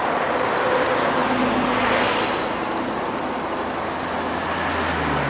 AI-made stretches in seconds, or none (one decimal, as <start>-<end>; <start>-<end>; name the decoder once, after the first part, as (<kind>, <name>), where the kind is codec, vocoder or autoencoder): none